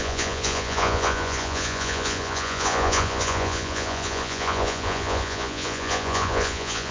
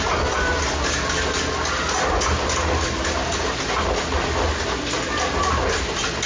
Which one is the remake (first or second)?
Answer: first